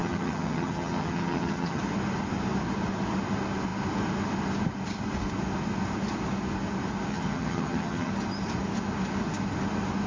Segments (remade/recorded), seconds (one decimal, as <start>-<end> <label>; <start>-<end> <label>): 0.0-1.8 remade; 1.8-7.1 recorded; 7.1-8.1 remade; 8.1-10.1 recorded